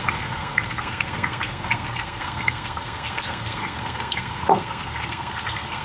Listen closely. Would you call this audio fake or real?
fake